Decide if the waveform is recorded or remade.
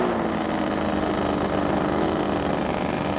recorded